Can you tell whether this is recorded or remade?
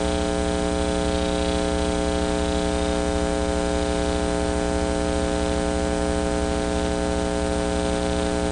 recorded